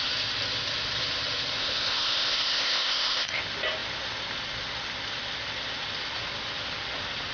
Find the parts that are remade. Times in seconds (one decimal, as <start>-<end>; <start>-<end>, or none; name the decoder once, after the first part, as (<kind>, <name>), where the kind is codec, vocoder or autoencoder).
1.6-3.4 (codec, ZipCodec)